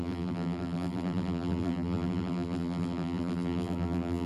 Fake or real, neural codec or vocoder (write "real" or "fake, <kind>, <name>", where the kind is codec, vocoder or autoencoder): fake, vocoder, BigVGAN v2